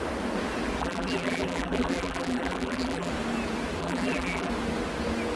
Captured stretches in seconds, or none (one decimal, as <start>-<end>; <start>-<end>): 0.0-0.8; 3.1-3.8; 4.5-5.4